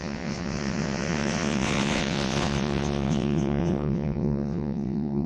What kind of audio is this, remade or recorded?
remade